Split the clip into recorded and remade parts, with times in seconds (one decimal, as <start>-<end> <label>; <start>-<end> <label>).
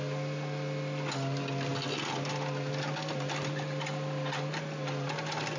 0.0-5.6 recorded